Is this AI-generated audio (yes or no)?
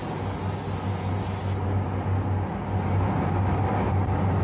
no